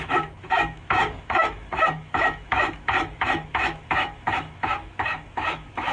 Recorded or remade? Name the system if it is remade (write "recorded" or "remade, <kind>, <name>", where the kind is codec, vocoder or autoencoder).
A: remade, autoencoder, DAC-VAE